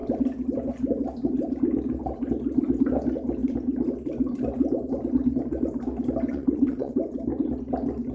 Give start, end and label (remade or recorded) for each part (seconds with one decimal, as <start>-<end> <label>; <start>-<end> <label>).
0.0-6.3 recorded; 6.3-7.0 remade; 7.0-8.1 recorded